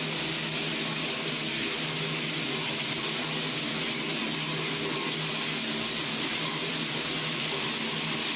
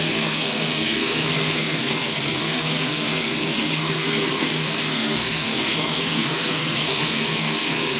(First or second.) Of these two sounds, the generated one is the second